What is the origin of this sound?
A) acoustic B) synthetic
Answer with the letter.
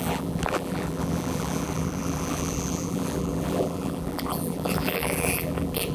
B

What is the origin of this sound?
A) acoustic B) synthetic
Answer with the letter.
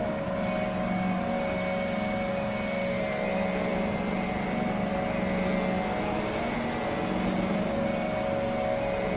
A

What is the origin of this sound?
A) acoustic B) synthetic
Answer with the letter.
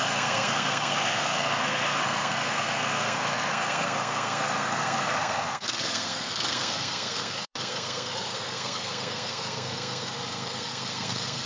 B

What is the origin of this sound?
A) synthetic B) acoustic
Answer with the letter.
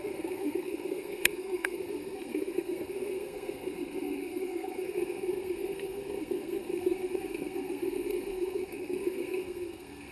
A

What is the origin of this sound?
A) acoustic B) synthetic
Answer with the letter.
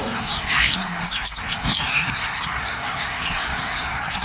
B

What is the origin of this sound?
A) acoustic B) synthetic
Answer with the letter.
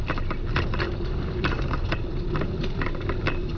A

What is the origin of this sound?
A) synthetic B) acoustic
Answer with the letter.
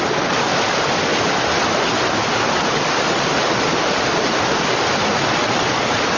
B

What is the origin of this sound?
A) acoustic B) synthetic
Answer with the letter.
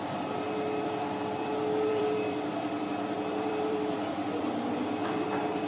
B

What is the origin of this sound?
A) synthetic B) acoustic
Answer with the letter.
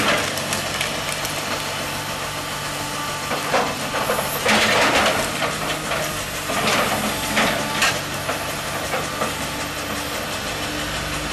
B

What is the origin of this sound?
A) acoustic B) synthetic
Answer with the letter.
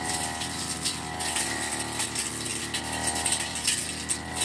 A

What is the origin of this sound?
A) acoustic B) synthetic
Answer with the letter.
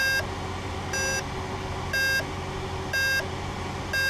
A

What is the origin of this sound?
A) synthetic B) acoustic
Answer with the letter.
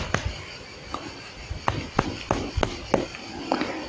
B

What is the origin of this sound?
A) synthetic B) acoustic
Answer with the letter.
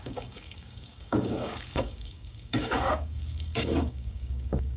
A